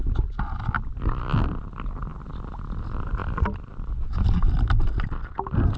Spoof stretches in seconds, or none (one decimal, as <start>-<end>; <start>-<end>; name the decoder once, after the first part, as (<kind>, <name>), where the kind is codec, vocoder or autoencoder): none

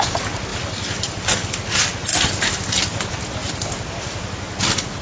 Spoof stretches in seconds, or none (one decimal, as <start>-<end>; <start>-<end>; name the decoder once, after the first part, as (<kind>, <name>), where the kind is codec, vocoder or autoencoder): 0.5-1.5 (vocoder, BigVGAN v2)

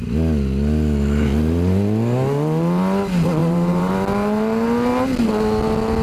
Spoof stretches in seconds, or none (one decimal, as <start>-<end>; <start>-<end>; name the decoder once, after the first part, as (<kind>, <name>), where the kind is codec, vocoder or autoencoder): 3.4-3.9 (vocoder, BigVGAN v2)

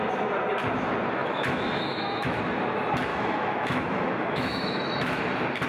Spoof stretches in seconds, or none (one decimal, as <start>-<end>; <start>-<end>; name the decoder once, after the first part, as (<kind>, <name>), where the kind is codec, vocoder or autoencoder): 1.2-2.4 (autoencoder, DAC-VAE); 3.1-5.2